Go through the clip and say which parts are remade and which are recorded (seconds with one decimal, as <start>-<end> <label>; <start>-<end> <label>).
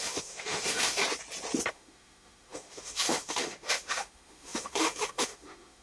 0.0-1.0 remade; 1.0-1.7 recorded; 1.7-5.8 remade